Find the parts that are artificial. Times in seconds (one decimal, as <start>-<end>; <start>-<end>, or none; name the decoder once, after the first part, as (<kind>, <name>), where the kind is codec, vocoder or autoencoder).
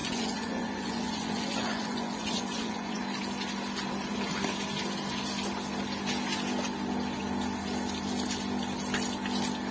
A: 0.0-3.0 (vocoder, Vocos)